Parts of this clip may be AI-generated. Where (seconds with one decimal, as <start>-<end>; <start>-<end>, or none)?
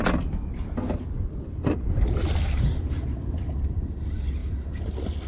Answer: 4.4-5.3